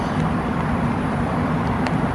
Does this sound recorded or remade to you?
remade